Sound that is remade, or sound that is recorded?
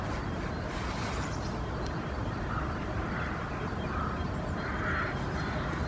remade